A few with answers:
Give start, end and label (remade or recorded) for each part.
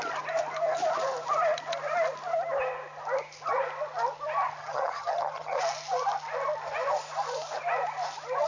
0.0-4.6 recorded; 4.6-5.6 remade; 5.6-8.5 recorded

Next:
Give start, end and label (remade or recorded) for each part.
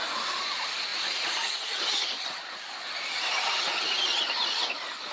0.0-0.9 recorded; 0.9-1.8 remade; 1.8-5.1 recorded